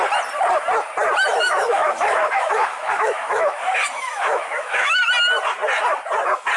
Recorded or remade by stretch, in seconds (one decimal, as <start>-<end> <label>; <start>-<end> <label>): 0.0-1.3 recorded; 1.3-5.0 remade; 5.0-6.6 recorded